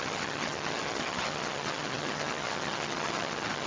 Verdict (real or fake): fake